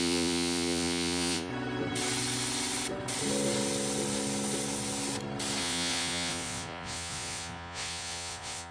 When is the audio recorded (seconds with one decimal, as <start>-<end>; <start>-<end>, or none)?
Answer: 1.5-5.6